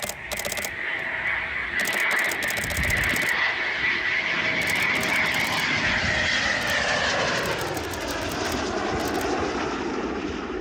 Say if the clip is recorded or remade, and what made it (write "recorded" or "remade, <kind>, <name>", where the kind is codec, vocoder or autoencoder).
recorded